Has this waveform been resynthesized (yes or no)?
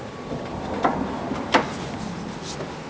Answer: no